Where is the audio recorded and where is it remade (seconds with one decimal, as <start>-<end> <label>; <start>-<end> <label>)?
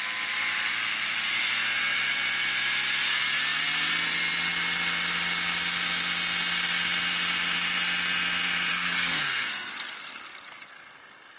0.0-8.7 recorded; 8.7-9.7 remade; 9.7-11.4 recorded